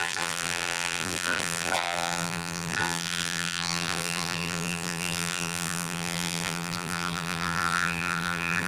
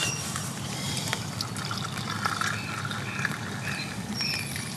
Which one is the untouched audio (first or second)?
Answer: second